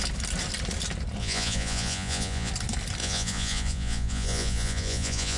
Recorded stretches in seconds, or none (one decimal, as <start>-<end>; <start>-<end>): 0.0-1.2; 2.5-3.0